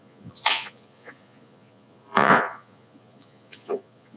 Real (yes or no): no